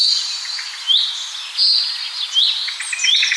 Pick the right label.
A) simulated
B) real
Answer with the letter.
B